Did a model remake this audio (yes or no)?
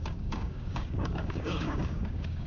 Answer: yes